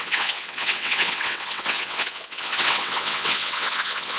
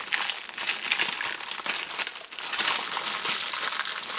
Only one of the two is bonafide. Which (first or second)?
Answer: second